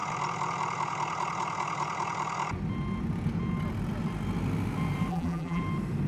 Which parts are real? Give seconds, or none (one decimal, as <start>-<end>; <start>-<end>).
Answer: 0.0-5.1; 5.6-6.1